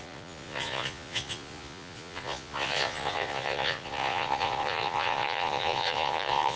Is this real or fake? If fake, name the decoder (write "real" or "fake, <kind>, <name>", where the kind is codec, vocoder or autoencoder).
fake, vocoder, Vocos